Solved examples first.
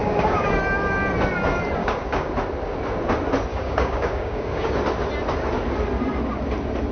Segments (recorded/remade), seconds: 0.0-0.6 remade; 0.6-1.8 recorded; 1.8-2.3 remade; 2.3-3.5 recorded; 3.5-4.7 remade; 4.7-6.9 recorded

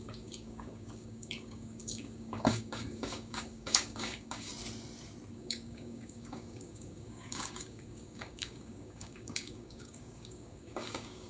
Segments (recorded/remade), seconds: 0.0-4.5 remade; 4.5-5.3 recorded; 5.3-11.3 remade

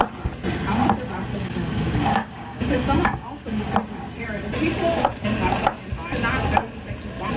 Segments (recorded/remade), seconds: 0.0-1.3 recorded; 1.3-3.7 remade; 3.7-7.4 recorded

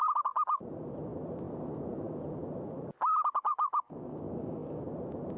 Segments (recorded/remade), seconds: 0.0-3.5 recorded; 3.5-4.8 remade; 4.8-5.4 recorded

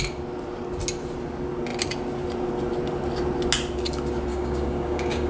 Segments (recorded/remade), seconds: 0.0-4.3 recorded; 4.3-5.3 remade

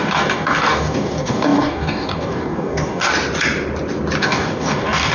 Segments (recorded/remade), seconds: 0.0-3.1 remade; 3.1-4.2 recorded; 4.2-5.1 remade